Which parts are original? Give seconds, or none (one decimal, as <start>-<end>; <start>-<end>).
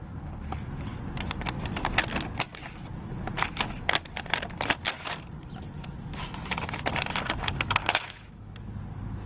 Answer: 0.0-7.8; 8.5-9.3